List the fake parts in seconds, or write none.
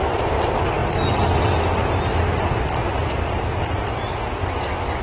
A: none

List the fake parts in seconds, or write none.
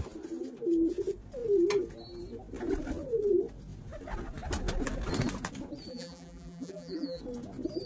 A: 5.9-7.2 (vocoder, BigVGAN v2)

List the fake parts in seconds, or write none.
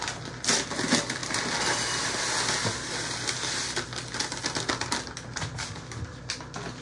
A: none